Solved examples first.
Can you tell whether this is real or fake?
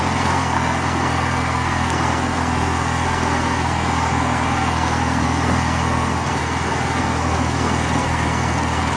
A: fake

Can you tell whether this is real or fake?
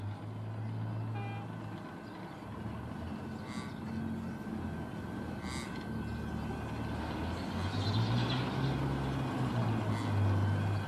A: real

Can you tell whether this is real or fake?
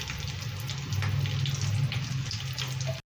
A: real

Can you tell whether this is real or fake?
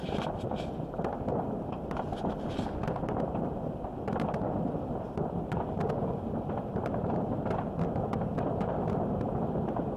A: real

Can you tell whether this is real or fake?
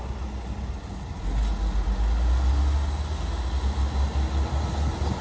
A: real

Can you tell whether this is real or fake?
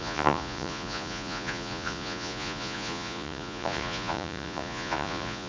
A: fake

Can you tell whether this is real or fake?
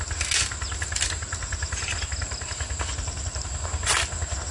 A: real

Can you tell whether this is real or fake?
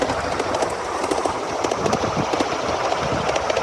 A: real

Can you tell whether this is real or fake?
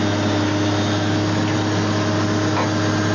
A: real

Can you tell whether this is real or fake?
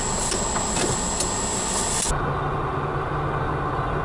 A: real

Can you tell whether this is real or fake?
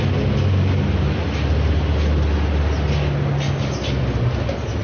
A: real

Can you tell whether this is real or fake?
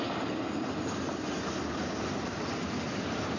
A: real